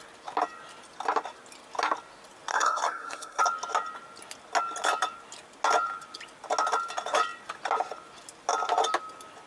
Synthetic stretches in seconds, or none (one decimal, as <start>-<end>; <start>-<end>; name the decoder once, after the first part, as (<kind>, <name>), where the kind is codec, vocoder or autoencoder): 2.5-3.4 (codec, SNAC)